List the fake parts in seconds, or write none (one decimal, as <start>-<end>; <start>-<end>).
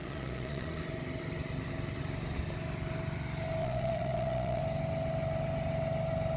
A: 0.0-0.8; 3.6-4.6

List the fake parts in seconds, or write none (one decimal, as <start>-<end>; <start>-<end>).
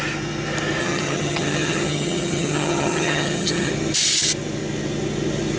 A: 0.8-3.7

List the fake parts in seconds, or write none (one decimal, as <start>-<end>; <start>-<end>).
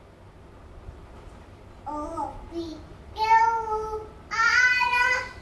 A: none